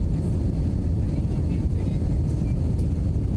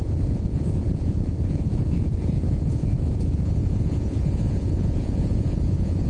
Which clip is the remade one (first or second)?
second